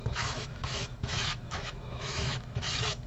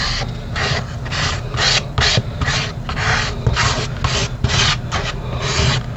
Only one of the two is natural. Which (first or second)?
second